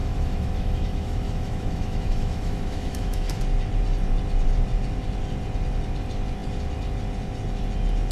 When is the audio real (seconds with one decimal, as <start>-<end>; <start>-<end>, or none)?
3.4-8.1